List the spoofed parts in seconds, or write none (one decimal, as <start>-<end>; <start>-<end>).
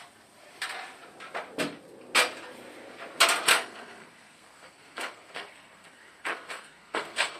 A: 3.5-7.4